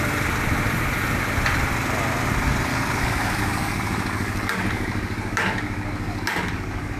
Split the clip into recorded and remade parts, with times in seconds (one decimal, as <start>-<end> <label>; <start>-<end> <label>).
0.0-2.7 recorded; 2.7-7.0 remade